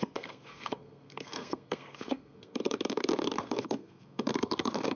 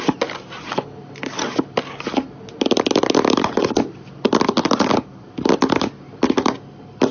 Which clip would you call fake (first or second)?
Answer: first